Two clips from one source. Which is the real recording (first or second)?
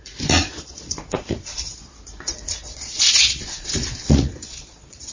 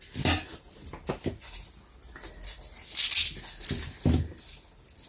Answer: second